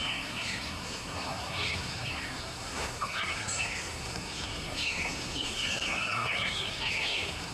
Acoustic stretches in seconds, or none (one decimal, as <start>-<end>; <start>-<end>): none